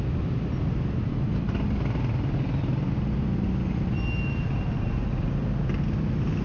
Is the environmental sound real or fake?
real